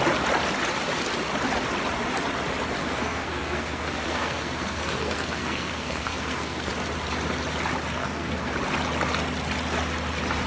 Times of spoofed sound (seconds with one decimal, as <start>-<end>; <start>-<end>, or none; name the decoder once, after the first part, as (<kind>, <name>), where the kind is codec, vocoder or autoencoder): 2.8-6.7 (codec, SNAC); 8.0-8.5